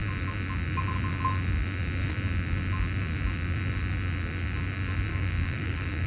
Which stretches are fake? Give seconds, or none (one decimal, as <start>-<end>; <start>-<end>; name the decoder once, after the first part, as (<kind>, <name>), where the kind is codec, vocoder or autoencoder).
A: 5.1-6.1 (codec, DAC)